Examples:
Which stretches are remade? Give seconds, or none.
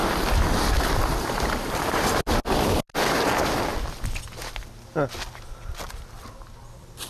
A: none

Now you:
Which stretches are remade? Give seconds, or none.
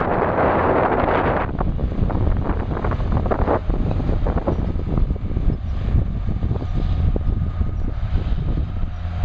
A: 0.6-9.2 (vocoder, BigVGAN v2)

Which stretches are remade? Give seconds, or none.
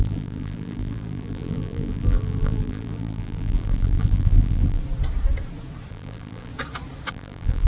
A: 0.0-4.8 (vocoder, BigVGAN v2); 5.9-6.5; 7.1-7.7